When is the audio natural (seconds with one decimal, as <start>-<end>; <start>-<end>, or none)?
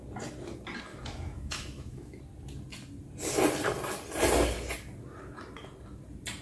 0.0-0.9; 2.2-6.4